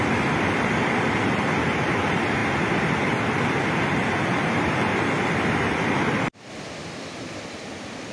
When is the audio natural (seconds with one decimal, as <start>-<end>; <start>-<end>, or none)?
none

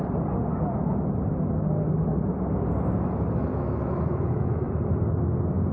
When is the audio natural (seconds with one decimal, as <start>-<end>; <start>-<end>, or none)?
0.0-3.5; 4.7-5.7

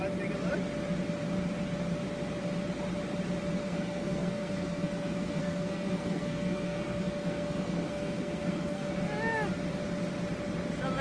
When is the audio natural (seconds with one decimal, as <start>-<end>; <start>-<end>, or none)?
0.0-3.6; 8.9-11.0

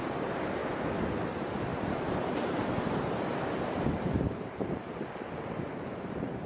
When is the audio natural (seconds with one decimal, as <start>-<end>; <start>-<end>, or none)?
0.6-1.2

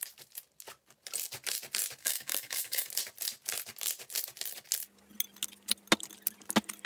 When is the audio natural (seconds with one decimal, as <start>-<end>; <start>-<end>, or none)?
0.0-2.0; 2.9-6.9